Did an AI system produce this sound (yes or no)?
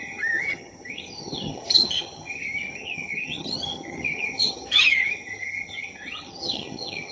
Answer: yes